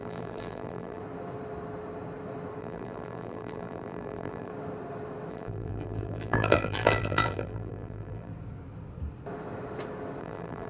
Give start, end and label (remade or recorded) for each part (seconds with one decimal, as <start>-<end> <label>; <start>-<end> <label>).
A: 0.0-1.0 remade; 1.0-2.6 recorded; 2.6-4.5 remade; 4.5-5.3 recorded; 5.3-8.3 remade; 8.3-10.2 recorded; 10.2-10.7 remade